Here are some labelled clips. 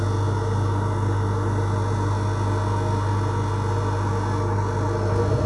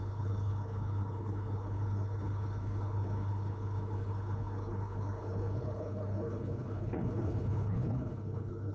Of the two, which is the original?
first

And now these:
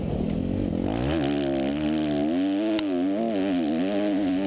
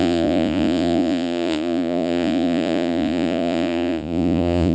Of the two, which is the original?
first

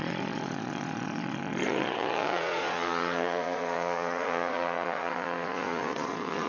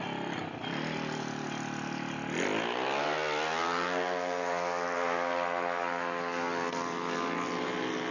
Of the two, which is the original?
second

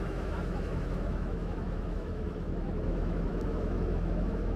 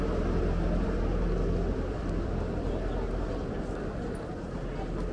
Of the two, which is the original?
second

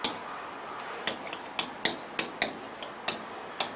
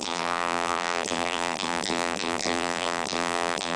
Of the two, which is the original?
first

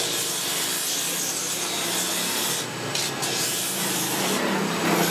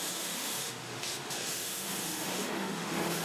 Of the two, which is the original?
first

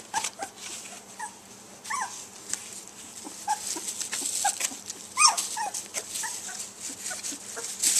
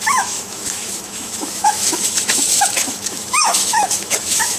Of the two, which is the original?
first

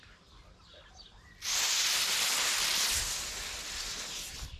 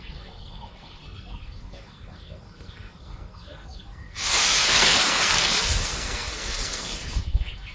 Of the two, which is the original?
first